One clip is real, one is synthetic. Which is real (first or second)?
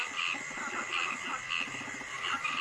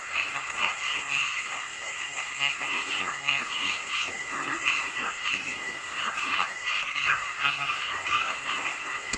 first